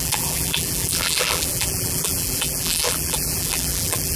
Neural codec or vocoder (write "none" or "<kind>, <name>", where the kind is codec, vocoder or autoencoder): vocoder, BigVGAN v2